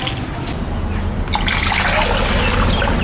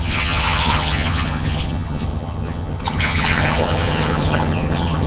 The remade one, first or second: second